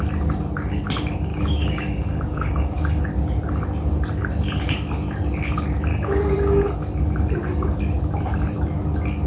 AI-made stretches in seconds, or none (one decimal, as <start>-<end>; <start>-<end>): 1.3-3.0; 5.9-6.7